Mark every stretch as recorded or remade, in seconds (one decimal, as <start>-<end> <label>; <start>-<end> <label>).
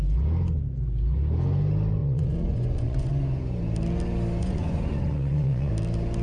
0.0-2.0 recorded; 2.0-3.1 remade; 3.1-4.4 recorded; 4.4-5.7 remade; 5.7-6.2 recorded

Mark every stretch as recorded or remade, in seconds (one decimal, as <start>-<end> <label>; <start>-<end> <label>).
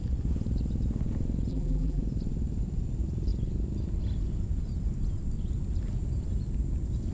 0.0-1.5 recorded; 1.5-2.0 remade; 2.0-7.1 recorded